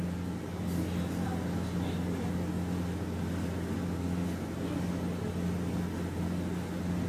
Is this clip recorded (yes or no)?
yes